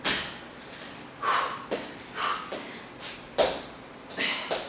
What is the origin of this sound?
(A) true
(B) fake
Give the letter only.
A